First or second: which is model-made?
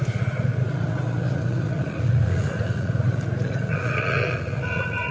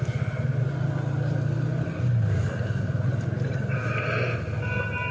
first